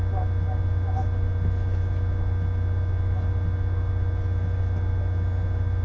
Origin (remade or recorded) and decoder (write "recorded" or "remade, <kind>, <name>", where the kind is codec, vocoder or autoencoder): recorded